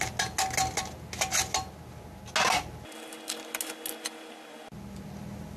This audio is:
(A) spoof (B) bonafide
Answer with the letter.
B